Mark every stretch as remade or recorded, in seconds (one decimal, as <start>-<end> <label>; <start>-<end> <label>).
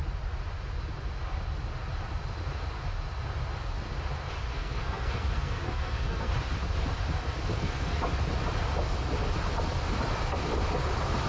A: 0.0-4.5 recorded; 4.5-6.3 remade; 6.3-7.5 recorded; 7.5-8.0 remade; 8.0-11.3 recorded